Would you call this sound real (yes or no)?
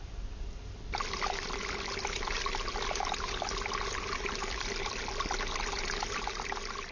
yes